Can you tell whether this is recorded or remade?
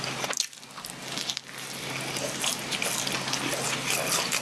recorded